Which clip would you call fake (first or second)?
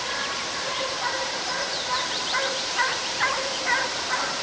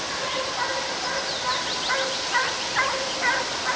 first